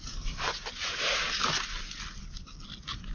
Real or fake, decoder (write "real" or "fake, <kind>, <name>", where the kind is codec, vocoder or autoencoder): real